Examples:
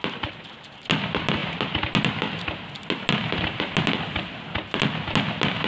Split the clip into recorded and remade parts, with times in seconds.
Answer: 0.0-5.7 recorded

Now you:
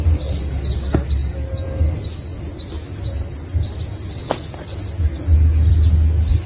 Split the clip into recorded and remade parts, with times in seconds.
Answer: 0.0-6.5 recorded

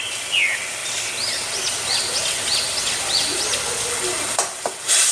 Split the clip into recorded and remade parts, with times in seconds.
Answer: 0.0-5.1 recorded

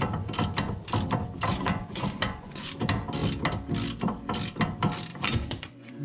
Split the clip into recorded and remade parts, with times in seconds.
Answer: 0.0-1.5 recorded; 1.5-2.7 remade; 2.7-5.1 recorded; 5.1-6.0 remade

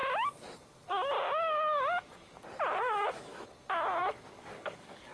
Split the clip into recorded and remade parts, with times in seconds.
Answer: 0.0-2.8 recorded; 2.8-3.3 remade; 3.3-4.0 recorded; 4.0-5.1 remade